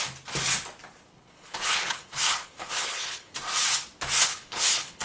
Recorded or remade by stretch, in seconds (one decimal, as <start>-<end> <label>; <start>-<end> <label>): 0.0-1.1 recorded; 1.1-3.3 remade; 3.3-4.3 recorded; 4.3-5.0 remade